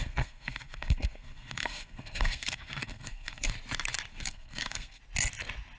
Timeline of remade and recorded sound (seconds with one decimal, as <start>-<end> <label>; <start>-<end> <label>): 0.0-3.5 remade; 3.5-4.1 recorded; 4.1-5.0 remade; 5.0-5.8 recorded